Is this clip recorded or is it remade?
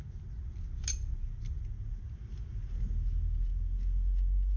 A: recorded